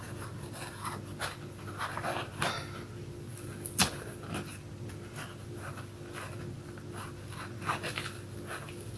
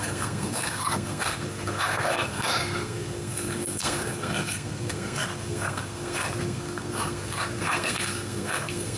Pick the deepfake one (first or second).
second